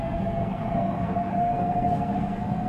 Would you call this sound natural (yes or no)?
no